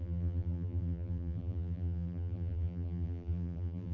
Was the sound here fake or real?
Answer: fake